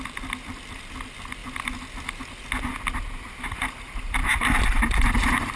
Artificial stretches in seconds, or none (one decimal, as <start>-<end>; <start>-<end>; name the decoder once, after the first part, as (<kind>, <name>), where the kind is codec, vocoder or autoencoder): none